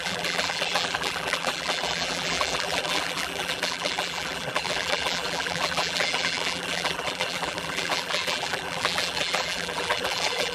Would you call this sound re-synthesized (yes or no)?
yes